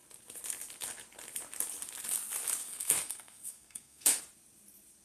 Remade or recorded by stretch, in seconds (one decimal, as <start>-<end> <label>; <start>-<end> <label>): 0.0-2.6 recorded; 2.6-4.2 remade; 4.2-5.0 recorded